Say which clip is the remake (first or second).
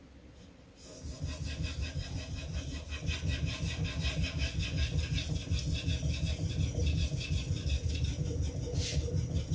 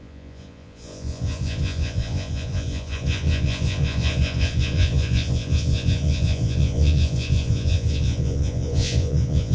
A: second